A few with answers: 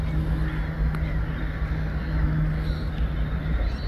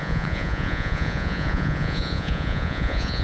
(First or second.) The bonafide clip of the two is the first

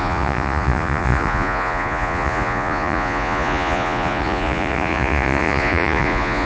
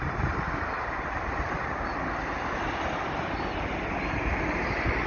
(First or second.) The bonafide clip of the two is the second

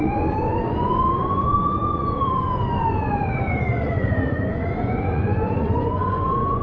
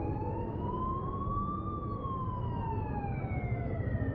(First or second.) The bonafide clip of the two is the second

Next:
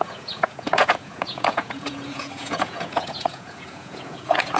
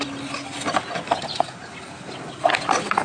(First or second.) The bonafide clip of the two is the second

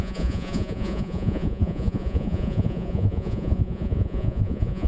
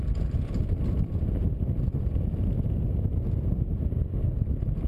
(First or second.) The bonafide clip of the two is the second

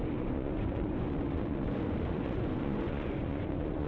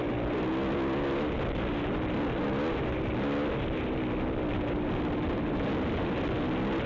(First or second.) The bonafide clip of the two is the second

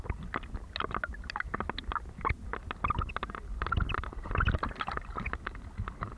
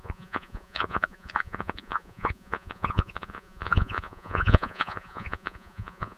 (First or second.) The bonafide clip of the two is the first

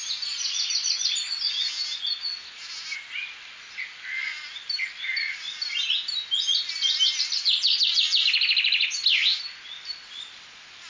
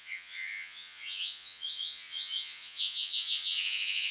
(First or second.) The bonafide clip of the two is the first